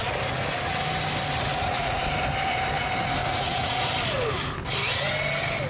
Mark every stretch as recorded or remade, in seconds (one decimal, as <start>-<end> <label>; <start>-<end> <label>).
0.0-1.5 recorded; 1.5-2.0 remade; 2.0-3.2 recorded; 3.2-3.8 remade; 3.8-5.7 recorded